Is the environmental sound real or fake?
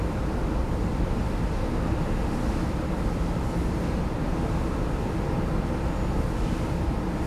real